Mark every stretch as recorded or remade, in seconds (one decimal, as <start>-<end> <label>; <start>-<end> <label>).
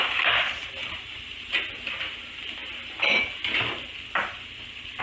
0.0-0.8 remade; 0.8-1.9 recorded; 1.9-5.0 remade